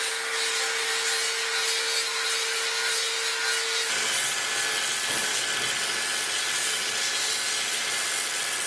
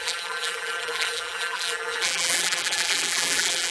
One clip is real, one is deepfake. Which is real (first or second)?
first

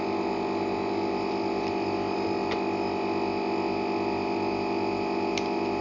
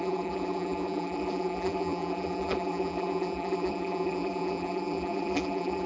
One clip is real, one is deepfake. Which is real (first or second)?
first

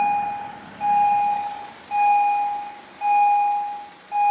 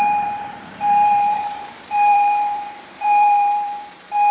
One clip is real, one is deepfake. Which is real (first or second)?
first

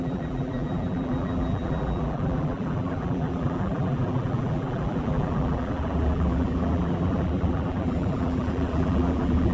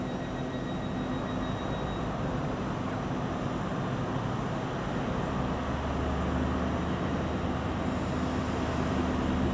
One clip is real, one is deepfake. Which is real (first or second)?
second